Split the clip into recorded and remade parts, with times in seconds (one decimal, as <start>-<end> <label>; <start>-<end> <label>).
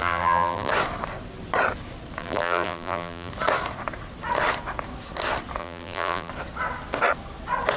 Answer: 0.0-0.7 remade; 0.7-2.2 recorded; 2.2-3.3 remade; 3.3-5.6 recorded; 5.6-6.3 remade; 6.3-7.8 recorded